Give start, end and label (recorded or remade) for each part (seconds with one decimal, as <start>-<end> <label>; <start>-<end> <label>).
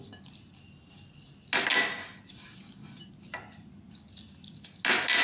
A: 0.0-5.2 recorded